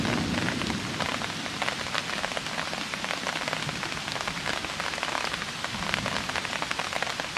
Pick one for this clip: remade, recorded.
recorded